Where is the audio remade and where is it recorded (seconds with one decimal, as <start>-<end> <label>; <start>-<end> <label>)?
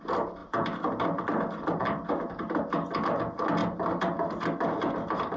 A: 0.0-0.4 recorded; 0.4-2.1 remade; 2.1-5.4 recorded